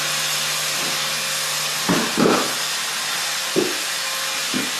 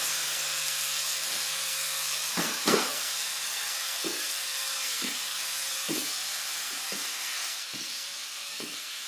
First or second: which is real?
first